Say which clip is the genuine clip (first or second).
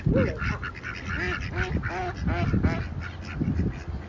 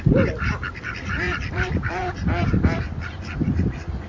first